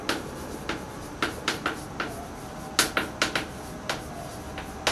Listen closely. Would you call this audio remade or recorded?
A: recorded